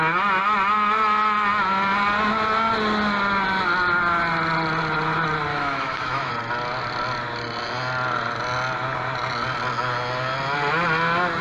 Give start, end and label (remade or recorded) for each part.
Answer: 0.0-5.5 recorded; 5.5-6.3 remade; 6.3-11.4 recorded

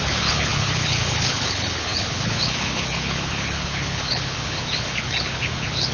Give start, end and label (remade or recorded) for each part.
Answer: 0.0-5.9 remade

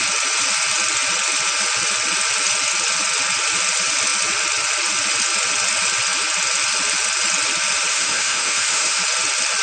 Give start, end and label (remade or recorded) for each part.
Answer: 0.0-7.9 recorded; 7.9-9.0 remade; 9.0-9.6 recorded

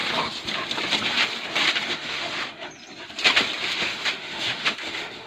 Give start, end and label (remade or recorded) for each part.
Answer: 0.0-1.9 recorded; 1.9-2.7 remade; 2.7-3.6 recorded; 3.6-5.3 remade

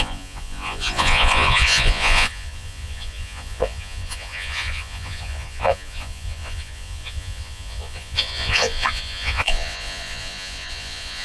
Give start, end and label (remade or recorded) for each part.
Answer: 0.0-11.2 remade

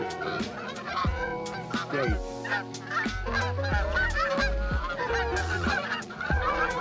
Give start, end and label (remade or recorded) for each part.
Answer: 0.0-1.3 remade; 1.3-5.4 recorded; 5.4-6.8 remade